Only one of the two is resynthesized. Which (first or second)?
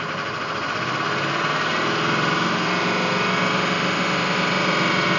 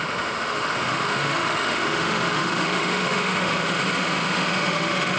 second